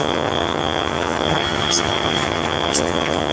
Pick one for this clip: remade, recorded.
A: remade